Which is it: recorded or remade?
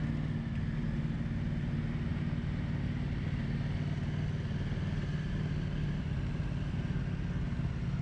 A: recorded